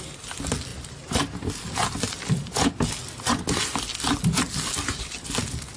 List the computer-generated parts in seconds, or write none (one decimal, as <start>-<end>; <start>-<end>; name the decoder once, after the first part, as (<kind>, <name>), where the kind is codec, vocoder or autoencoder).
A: none